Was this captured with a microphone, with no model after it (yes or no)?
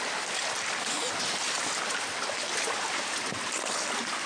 yes